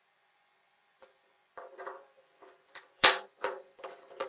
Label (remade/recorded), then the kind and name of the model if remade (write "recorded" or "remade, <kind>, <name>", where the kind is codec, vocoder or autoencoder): remade, vocoder, Vocos